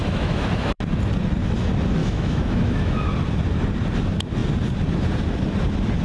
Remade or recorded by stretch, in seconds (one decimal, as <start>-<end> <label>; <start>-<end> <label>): 0.0-0.8 remade; 0.8-2.0 recorded; 2.0-3.1 remade; 3.1-6.0 recorded